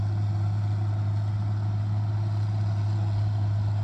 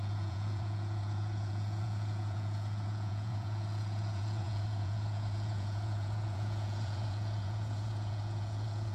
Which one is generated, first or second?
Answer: second